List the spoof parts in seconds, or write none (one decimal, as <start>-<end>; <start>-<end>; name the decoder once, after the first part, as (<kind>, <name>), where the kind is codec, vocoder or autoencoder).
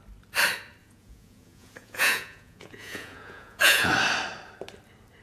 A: 0.8-3.9 (vocoder, Vocos)